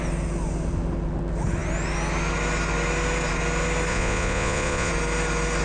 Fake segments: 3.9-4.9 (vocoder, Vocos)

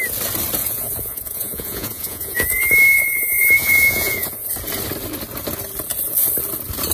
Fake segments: 0.6-4.5 (vocoder, Vocos)

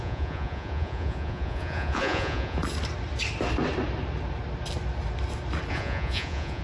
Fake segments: 0.0-2.6 (vocoder, Vocos); 5.7-6.6

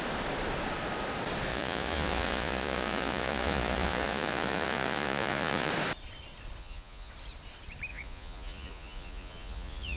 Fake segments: 1.5-5.7 (vocoder, Vocos); 6.6-7.1; 7.9-10.0

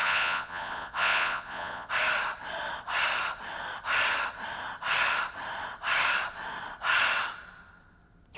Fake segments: 0.0-1.9 (vocoder, Vocos)